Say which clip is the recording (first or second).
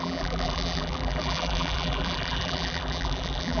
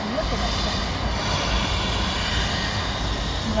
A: second